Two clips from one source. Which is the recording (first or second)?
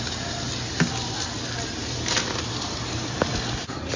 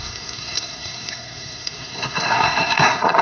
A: first